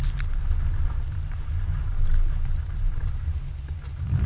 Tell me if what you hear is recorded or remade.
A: remade